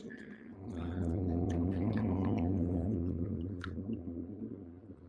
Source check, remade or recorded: remade